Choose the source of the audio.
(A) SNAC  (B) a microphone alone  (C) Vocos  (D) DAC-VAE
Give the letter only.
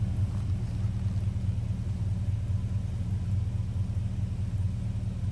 B